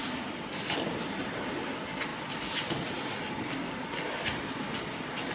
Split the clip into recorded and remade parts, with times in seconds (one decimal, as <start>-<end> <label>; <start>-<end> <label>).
0.0-5.3 recorded